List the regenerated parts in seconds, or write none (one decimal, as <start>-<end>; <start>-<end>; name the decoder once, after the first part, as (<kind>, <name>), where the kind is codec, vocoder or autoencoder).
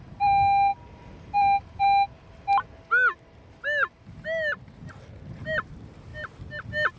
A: none